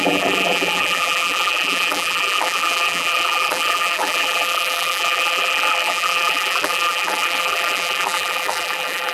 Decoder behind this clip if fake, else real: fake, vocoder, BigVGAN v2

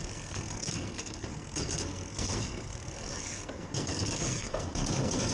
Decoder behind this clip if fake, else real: fake, codec, SNAC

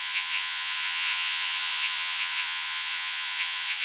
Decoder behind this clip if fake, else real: fake, vocoder, Vocos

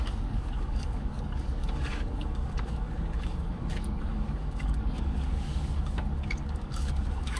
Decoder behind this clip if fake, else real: fake, codec, DAC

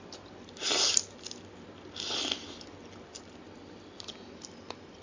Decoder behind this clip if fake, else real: real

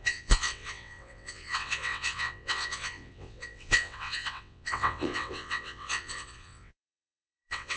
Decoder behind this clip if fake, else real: fake, vocoder, WaveNeXt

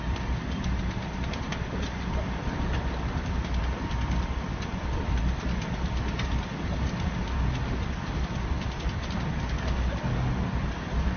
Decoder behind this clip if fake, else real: real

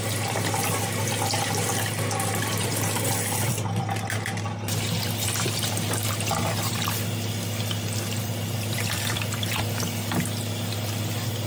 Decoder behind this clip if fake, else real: real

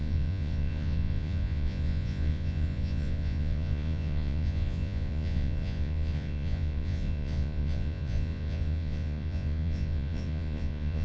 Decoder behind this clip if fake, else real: fake, vocoder, Vocos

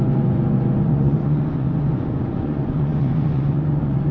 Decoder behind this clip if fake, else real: fake, vocoder, Vocos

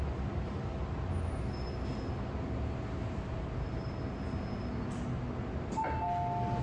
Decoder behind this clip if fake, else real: real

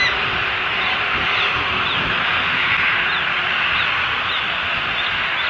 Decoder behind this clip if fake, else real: real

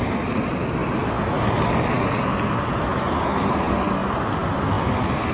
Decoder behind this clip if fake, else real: real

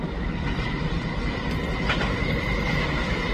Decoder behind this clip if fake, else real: real